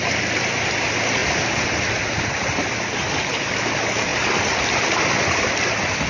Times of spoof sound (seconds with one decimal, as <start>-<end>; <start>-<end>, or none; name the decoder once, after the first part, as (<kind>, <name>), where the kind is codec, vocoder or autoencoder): 0.0-4.1 (vocoder, BigVGAN v2); 5.0-6.1